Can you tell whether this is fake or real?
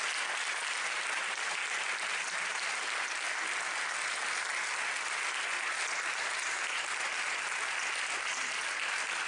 real